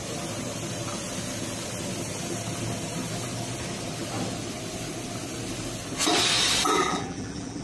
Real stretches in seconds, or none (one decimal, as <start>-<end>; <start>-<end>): 0.0-6.7